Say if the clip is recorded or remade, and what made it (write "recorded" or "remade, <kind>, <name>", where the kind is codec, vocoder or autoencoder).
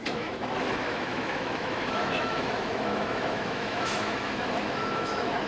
remade, autoencoder, DAC-VAE